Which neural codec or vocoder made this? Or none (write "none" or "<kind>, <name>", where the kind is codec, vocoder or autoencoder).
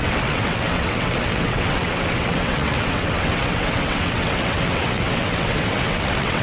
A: vocoder, WaveNeXt